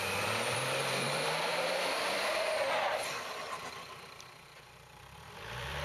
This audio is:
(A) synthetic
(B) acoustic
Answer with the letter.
A